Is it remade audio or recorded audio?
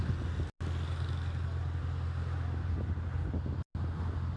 recorded